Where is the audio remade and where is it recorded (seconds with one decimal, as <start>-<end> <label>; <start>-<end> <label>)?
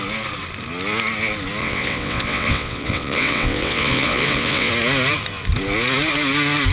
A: 0.0-1.6 recorded; 1.6-4.7 remade; 4.7-6.7 recorded